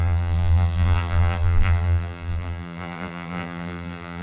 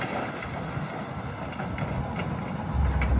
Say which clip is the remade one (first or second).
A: first